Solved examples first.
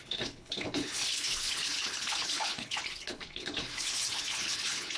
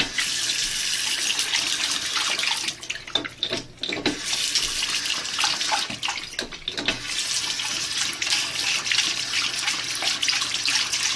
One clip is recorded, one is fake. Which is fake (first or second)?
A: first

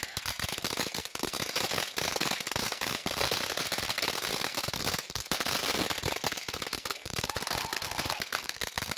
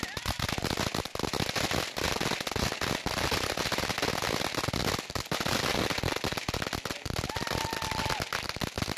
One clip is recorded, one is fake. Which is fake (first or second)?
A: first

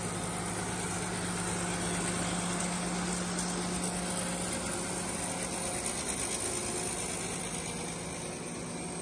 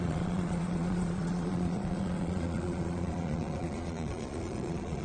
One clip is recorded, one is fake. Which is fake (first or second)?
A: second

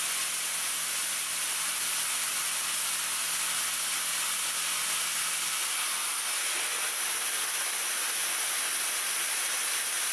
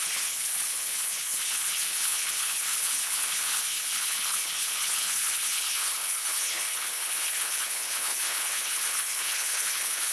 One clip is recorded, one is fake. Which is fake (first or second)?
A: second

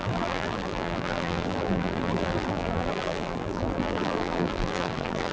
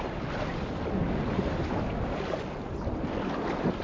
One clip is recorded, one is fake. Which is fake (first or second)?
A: first